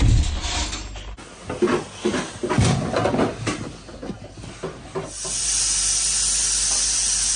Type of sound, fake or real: real